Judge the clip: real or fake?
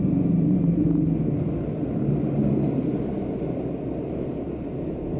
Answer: real